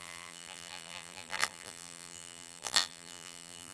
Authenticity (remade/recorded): remade